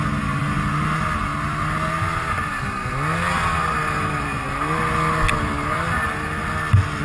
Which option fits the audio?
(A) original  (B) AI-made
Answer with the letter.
A